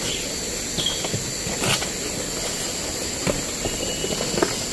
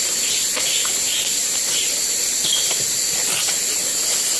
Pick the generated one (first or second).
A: second